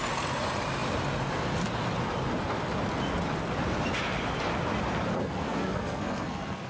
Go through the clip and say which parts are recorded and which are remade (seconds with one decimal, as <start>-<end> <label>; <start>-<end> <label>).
0.0-5.1 recorded; 5.1-6.7 remade